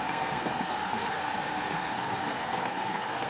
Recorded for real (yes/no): no